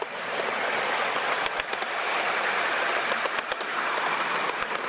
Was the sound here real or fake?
real